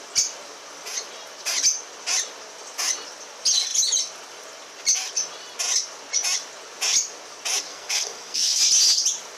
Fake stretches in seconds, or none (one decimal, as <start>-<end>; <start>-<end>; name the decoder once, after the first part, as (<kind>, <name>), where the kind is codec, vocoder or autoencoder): 7.7-8.6 (codec, SNAC)

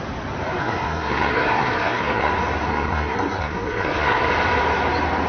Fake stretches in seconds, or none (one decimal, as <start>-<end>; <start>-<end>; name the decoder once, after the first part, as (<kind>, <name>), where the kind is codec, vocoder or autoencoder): 0.6-2.3 (codec, SNAC); 2.7-4.3